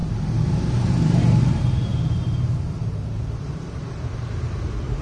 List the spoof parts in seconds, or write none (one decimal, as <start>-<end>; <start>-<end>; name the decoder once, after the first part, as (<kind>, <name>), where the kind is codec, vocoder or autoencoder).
0.0-1.9 (vocoder, BigVGAN v2); 2.6-5.0